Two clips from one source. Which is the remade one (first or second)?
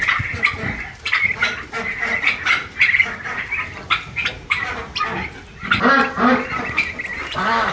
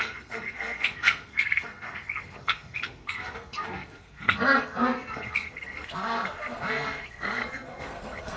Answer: second